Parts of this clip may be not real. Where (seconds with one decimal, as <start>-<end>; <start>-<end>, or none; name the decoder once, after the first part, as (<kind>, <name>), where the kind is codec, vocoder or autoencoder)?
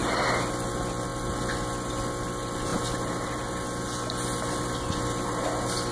none